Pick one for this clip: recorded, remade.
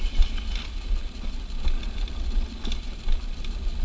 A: recorded